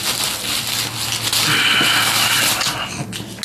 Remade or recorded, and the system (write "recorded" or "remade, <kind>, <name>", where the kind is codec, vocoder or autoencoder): recorded